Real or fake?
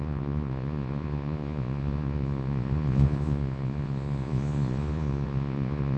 fake